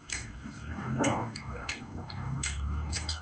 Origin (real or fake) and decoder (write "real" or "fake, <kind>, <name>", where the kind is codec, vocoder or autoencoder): fake, codec, DAC